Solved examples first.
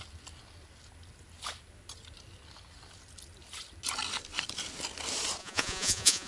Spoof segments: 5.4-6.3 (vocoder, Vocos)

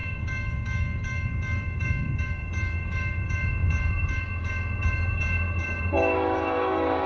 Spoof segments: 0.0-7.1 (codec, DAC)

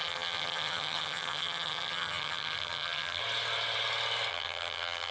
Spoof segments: 0.0-3.2 (vocoder, HiFi-GAN); 4.3-5.1

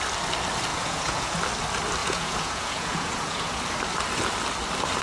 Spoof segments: 0.7-1.4 (vocoder, Vocos); 2.0-3.6